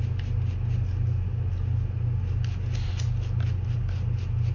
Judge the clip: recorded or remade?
recorded